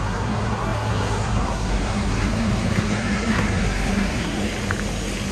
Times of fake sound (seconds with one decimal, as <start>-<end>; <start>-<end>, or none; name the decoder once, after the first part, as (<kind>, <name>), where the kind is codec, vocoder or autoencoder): 0.0-4.4 (codec, SNAC)